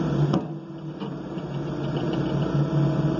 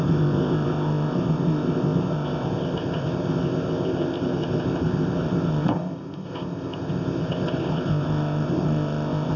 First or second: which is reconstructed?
second